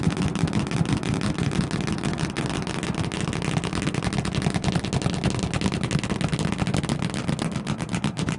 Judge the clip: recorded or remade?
recorded